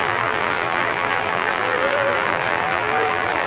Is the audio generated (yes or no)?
yes